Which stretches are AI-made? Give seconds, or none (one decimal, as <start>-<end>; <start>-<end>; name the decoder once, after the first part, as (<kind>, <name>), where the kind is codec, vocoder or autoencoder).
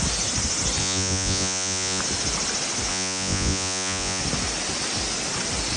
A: 0.8-2.0 (vocoder, Vocos); 2.9-4.2